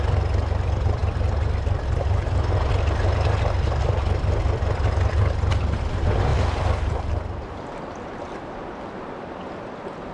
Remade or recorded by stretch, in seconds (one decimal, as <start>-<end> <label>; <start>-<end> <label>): 0.0-6.3 recorded; 6.3-9.1 remade; 9.1-10.1 recorded